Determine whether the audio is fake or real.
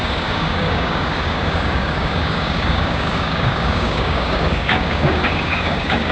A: fake